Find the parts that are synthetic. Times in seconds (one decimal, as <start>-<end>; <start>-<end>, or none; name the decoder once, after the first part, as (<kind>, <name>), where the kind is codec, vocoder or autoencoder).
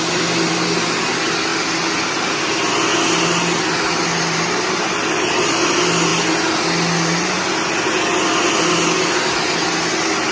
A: none